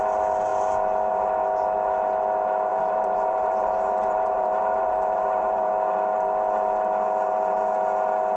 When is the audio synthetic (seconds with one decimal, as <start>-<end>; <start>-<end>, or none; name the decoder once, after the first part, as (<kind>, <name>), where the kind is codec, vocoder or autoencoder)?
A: 2.7-5.7 (vocoder, BigVGAN v2)